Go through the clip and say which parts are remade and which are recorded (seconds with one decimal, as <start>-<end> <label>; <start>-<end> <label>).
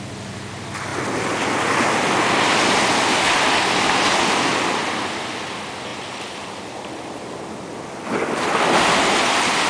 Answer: 0.0-5.9 recorded; 5.9-7.4 remade; 7.4-9.7 recorded